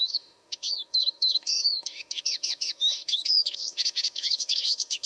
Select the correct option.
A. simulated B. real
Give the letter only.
A